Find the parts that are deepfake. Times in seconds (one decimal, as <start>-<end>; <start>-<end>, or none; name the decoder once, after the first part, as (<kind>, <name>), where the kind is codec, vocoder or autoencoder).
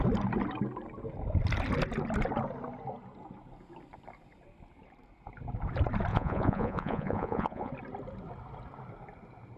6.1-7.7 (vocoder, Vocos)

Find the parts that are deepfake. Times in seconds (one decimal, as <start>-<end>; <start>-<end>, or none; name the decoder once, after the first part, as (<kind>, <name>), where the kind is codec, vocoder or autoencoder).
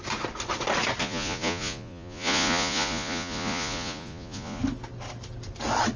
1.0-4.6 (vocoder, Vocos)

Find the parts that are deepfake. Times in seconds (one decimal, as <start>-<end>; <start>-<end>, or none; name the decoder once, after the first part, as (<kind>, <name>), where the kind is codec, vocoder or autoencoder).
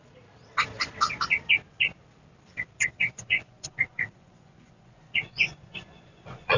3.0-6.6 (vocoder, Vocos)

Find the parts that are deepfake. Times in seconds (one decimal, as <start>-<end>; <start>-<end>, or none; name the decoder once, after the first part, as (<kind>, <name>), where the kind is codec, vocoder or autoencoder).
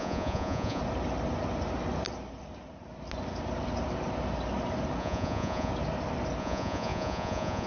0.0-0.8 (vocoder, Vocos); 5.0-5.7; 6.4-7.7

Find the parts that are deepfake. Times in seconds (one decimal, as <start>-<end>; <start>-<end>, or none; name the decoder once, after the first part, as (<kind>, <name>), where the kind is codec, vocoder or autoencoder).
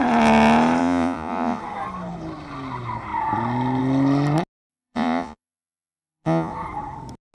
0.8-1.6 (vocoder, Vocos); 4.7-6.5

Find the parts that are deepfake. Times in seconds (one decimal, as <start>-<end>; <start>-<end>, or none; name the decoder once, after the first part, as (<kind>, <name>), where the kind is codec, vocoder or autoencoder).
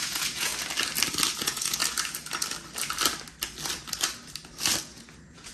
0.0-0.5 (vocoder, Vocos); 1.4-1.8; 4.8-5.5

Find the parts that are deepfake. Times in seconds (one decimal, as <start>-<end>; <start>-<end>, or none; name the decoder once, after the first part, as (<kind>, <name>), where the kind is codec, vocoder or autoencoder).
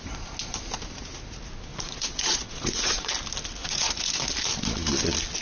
1.7-3.1 (vocoder, Vocos); 3.6-4.2